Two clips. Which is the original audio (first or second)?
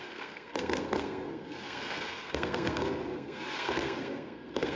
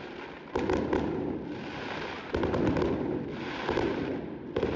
second